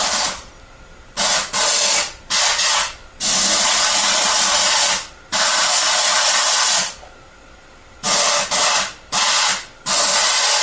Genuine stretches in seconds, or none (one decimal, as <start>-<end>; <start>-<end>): 0.0-10.6